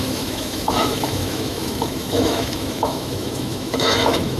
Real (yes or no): no